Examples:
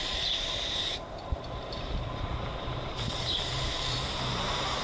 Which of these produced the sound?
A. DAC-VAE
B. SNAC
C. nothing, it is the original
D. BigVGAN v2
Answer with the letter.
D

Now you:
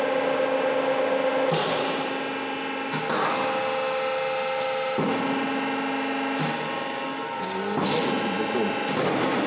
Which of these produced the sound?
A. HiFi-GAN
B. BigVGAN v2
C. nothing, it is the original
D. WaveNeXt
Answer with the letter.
C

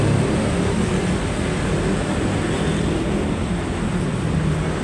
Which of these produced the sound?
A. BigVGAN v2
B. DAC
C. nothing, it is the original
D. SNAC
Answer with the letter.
C